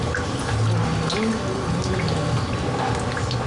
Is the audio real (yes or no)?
yes